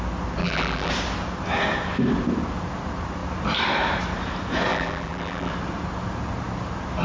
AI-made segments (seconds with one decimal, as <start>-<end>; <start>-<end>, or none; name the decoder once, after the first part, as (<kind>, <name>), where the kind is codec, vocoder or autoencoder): 0.4-0.9 (vocoder, BigVGAN v2); 4.7-5.5